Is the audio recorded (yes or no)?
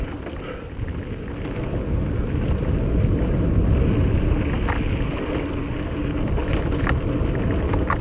yes